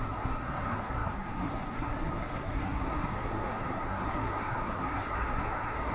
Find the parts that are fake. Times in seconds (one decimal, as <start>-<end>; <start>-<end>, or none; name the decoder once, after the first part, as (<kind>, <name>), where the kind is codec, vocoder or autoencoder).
0.0-5.9 (codec, SNAC)